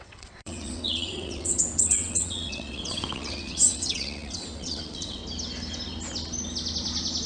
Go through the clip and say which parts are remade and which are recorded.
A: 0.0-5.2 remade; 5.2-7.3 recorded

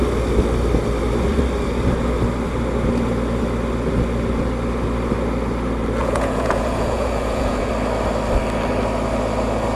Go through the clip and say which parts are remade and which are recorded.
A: 0.0-6.0 recorded; 6.0-7.7 remade; 7.7-9.8 recorded

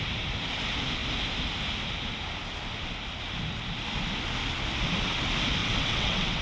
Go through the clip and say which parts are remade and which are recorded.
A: 0.0-5.6 recorded; 5.6-6.4 remade

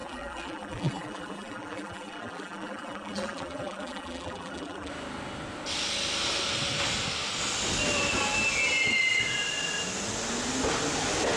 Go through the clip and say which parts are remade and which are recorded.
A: 0.0-4.9 remade; 4.9-11.4 recorded

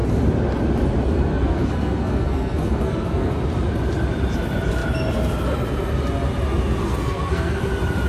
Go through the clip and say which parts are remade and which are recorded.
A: 0.0-1.3 recorded; 1.3-3.3 remade; 3.3-6.8 recorded; 6.8-7.6 remade; 7.6-8.1 recorded

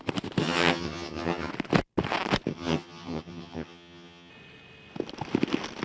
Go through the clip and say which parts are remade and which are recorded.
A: 0.0-0.4 recorded; 0.4-1.5 remade; 1.5-2.5 recorded; 2.5-4.3 remade; 4.3-5.8 recorded

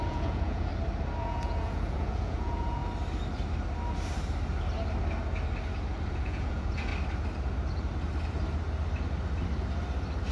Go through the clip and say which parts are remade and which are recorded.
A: 0.0-0.7 remade; 0.7-1.2 recorded; 1.2-2.8 remade; 2.8-6.1 recorded; 6.1-6.9 remade; 6.9-10.3 recorded